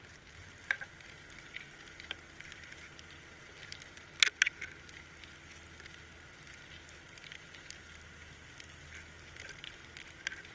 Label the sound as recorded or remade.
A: recorded